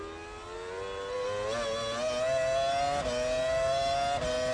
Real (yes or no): yes